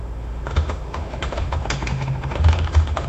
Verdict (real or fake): fake